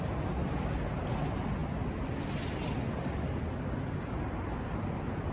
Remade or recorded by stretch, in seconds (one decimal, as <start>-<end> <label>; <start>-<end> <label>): 0.0-5.3 recorded